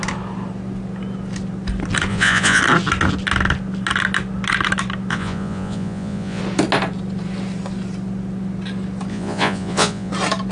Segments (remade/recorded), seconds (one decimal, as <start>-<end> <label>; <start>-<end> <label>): 0.0-2.1 recorded; 2.1-2.6 remade; 2.6-5.1 recorded; 5.1-6.4 remade; 6.4-9.1 recorded; 9.1-10.1 remade; 10.1-10.5 recorded

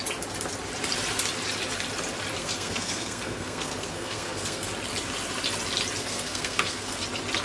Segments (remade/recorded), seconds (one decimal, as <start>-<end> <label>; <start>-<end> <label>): 0.0-2.4 recorded; 2.4-4.7 remade; 4.7-6.0 recorded; 6.0-7.0 remade; 7.0-7.4 recorded

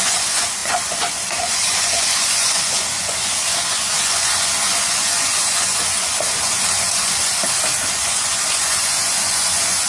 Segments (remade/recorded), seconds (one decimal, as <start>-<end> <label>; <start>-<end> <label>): 0.0-7.3 remade; 7.3-7.9 recorded; 7.9-9.9 remade

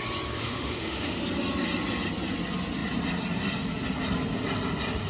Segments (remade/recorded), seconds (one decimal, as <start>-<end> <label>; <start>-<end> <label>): 0.0-0.4 recorded; 0.4-1.2 remade; 1.2-5.1 recorded